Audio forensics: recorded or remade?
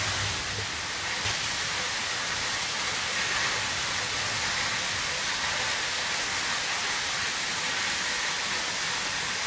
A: recorded